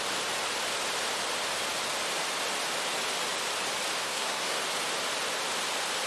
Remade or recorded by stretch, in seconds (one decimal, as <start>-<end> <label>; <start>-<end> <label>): 0.0-4.0 recorded; 4.0-4.6 remade; 4.6-6.1 recorded